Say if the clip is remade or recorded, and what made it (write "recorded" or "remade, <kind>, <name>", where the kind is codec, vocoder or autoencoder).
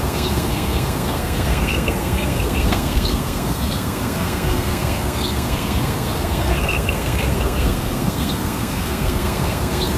remade, codec, SNAC